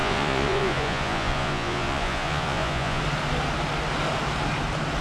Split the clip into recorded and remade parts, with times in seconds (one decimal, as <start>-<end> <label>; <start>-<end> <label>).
0.0-3.0 remade; 3.0-5.0 recorded